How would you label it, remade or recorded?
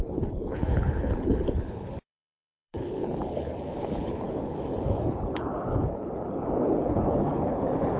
remade